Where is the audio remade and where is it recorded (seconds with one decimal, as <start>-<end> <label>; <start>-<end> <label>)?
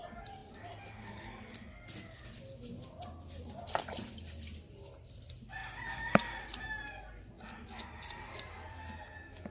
0.0-9.5 recorded